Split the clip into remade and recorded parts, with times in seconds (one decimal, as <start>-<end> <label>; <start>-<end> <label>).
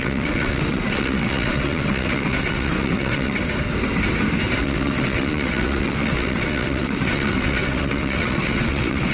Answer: 0.0-3.4 remade; 3.4-4.6 recorded; 4.6-9.1 remade